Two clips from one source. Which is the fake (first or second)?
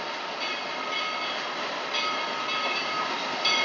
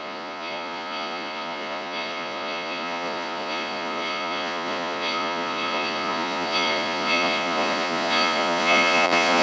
second